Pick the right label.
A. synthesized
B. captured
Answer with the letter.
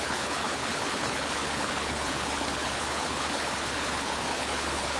A